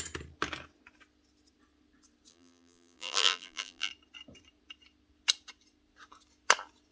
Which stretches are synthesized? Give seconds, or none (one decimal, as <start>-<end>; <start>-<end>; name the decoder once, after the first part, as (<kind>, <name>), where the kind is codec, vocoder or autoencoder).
2.3-3.9 (vocoder, BigVGAN v2)